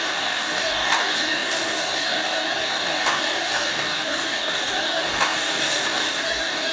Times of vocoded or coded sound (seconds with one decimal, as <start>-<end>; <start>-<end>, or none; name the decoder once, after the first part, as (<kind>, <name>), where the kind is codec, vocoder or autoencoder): 0.0-6.7 (codec, DAC)